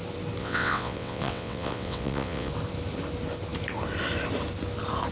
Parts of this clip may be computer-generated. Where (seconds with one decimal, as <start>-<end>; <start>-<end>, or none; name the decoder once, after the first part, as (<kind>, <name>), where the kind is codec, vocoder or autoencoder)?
0.4-2.5 (vocoder, WaveNeXt)